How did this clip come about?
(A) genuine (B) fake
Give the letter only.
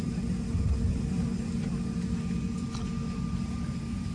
A